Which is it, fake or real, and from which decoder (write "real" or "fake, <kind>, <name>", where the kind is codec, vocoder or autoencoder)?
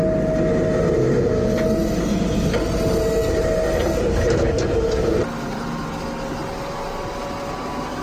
real